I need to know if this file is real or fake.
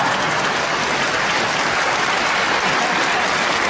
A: real